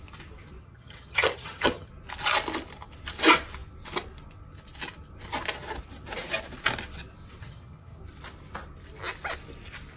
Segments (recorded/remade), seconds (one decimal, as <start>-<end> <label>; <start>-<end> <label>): 0.0-0.6 recorded; 0.6-1.9 remade; 1.9-7.4 recorded; 7.4-8.0 remade; 8.0-10.0 recorded